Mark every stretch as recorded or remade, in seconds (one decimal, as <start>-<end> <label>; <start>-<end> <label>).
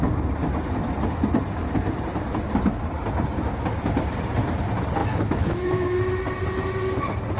0.0-5.0 recorded; 5.0-6.0 remade; 6.0-7.4 recorded